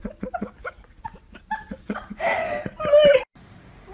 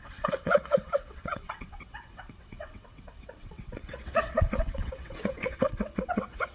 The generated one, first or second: second